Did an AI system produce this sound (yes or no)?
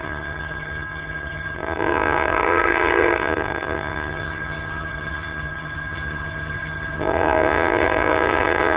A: yes